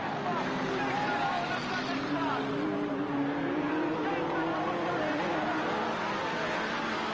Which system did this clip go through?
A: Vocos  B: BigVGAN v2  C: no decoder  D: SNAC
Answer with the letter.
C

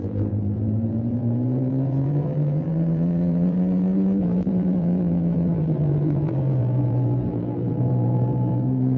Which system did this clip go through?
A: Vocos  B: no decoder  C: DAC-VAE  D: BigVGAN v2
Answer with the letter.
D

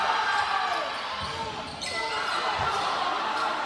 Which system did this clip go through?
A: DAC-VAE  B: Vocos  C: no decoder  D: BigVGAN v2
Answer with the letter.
C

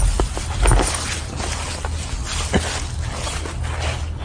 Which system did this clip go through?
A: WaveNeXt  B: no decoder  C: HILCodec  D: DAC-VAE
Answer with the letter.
B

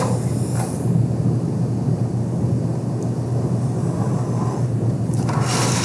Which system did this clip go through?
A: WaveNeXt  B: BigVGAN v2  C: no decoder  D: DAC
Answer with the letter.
C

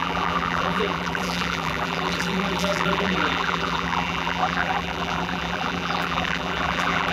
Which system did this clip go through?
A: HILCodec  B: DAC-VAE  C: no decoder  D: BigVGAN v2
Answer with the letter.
D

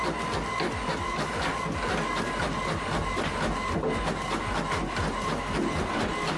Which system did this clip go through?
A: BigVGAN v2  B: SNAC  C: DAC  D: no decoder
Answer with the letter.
D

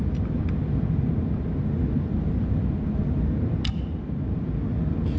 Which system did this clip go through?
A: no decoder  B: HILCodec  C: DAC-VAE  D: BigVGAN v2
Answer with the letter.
A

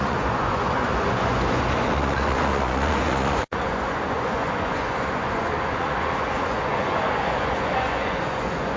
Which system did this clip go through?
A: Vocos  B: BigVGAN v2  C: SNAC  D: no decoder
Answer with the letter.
A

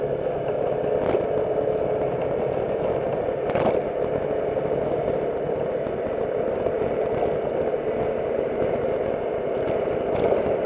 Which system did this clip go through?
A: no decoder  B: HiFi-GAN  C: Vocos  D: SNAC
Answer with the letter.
A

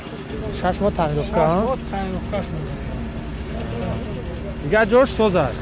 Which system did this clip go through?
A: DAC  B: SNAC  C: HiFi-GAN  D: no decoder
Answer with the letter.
D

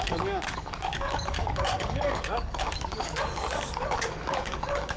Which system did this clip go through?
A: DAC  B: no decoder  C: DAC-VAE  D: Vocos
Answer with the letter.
A